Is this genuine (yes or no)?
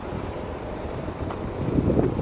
yes